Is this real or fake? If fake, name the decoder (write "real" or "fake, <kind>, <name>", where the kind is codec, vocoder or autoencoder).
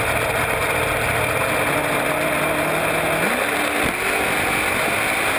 real